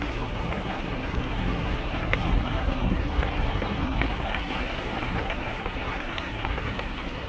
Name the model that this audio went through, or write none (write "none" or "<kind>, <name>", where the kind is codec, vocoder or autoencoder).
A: codec, SNAC